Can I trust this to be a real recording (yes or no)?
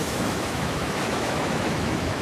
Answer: no